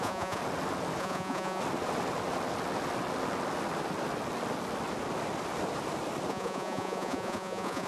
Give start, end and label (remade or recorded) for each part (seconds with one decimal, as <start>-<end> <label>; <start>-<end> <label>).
0.0-0.4 remade; 0.4-1.0 recorded; 1.0-1.6 remade; 1.6-6.3 recorded; 6.3-7.9 remade